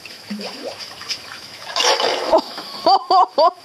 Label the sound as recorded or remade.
remade